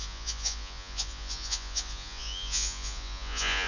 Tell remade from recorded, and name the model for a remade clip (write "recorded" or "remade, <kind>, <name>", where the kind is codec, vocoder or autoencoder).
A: remade, vocoder, Vocos